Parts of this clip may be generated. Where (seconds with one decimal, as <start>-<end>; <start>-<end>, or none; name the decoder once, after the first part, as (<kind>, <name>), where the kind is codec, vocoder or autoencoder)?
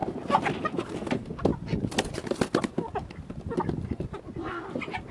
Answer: none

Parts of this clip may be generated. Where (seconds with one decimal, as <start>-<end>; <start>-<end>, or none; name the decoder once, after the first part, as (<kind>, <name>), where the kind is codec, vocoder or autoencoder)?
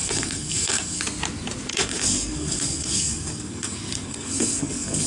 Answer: 0.0-1.0 (codec, SNAC); 1.7-5.1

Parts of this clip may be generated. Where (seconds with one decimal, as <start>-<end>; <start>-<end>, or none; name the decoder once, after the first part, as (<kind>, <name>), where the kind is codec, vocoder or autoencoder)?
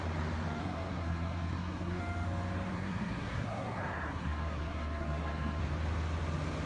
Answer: 0.6-2.0 (codec, SNAC); 2.7-5.6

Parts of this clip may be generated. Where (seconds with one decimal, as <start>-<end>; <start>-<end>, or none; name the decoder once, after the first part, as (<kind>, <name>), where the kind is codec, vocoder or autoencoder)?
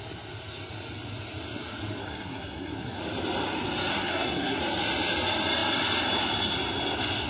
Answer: 2.0-3.0 (codec, SNAC); 3.9-4.6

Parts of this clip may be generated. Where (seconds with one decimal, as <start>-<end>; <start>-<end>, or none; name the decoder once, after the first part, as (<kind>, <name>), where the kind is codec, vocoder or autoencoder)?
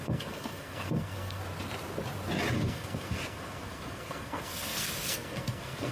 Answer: 0.0-1.4 (codec, SNAC); 2.5-5.9